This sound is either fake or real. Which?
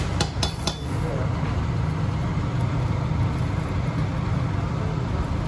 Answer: real